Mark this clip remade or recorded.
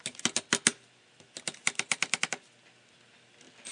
recorded